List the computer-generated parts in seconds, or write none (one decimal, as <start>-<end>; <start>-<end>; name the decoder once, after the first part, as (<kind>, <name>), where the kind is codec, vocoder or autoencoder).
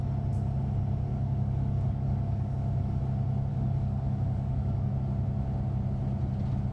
1.1-3.0 (codec, DAC); 3.5-4.9